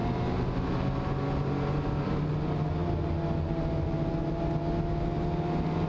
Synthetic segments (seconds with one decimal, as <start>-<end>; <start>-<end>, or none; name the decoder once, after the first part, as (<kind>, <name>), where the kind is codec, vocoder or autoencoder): none